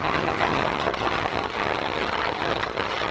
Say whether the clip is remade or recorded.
remade